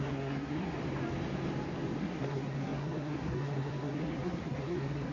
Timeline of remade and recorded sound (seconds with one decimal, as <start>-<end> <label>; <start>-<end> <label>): 0.0-0.8 remade; 0.8-2.0 recorded; 2.0-5.1 remade